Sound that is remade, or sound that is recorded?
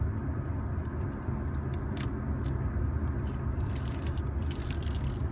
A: recorded